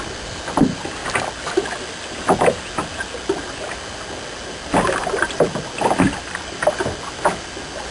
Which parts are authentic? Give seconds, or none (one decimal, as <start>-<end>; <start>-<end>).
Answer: 0.0-7.9